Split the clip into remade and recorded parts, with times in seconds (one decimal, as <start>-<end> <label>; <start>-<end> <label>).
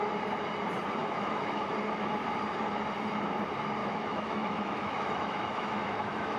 0.0-1.0 recorded; 1.0-1.7 remade; 1.7-3.8 recorded; 3.8-6.4 remade